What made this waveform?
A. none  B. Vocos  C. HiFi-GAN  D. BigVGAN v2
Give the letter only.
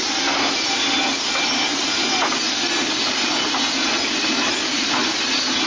A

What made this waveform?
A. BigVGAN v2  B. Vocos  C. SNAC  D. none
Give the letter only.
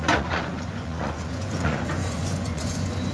B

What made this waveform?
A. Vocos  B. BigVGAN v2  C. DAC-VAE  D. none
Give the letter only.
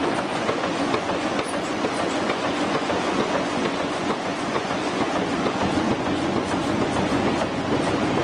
A